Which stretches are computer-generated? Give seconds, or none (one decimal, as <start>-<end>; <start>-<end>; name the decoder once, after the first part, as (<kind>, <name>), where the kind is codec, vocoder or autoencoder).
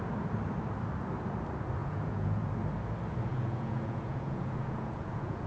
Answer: 1.8-2.5 (vocoder, Vocos); 3.3-5.5